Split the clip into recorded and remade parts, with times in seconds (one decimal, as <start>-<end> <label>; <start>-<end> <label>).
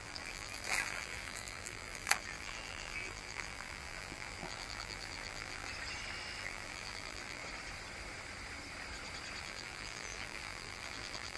0.0-5.7 remade; 5.7-6.4 recorded; 6.4-7.4 remade; 7.4-9.4 recorded; 9.4-11.4 remade